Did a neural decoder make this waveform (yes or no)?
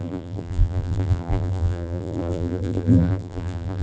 yes